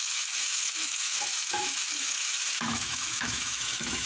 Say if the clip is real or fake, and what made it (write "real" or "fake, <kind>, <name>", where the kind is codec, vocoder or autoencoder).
fake, autoencoder, DAC-VAE